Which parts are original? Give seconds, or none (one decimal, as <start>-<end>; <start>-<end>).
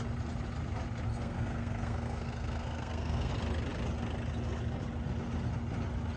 0.0-1.1; 3.3-6.2